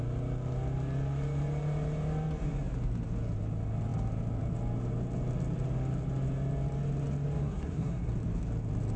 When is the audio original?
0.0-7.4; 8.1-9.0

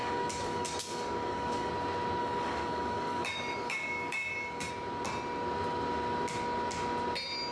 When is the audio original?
1.7-2.2; 4.7-7.5

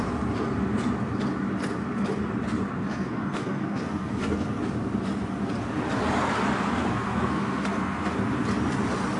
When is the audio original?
0.0-2.9; 4.6-6.8; 8.1-9.2